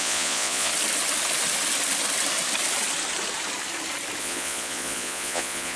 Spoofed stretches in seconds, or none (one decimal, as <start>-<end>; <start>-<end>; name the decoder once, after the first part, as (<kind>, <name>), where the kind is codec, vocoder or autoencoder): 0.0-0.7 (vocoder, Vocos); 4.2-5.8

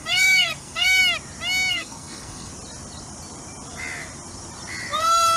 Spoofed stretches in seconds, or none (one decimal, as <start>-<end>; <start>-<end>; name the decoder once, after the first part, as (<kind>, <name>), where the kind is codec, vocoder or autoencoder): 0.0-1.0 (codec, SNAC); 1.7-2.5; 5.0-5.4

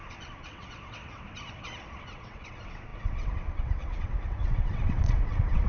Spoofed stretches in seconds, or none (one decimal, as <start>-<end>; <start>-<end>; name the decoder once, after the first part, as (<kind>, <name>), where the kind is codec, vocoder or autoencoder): 0.0-5.7 (vocoder, WaveNeXt)

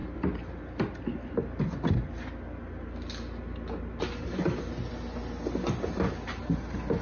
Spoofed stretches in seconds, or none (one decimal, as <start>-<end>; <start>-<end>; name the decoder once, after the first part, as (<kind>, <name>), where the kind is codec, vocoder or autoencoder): none